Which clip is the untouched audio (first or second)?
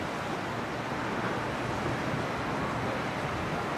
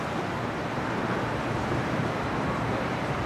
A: first